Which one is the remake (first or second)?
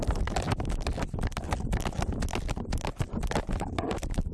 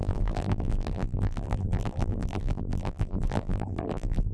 second